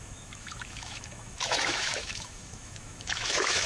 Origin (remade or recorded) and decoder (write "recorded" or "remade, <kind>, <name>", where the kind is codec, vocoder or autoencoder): remade, autoencoder, DAC-VAE